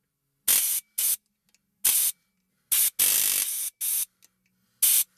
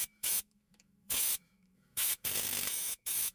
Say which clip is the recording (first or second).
first